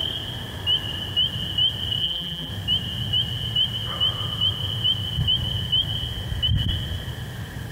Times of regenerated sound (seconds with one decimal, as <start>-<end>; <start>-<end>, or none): 2.0-2.5